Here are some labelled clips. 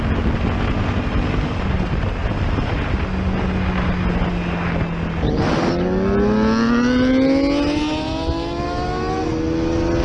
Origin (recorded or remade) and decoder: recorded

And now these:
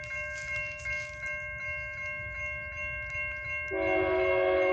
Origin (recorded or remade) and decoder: recorded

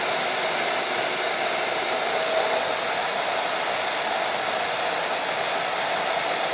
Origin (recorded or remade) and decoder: recorded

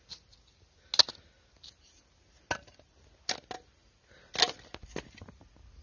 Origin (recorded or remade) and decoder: recorded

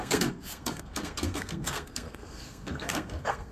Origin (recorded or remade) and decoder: remade, codec, SNAC